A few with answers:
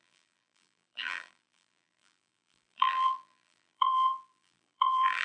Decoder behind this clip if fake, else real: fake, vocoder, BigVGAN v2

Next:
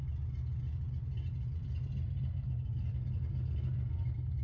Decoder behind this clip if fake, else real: real